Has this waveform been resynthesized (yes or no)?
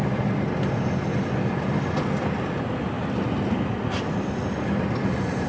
no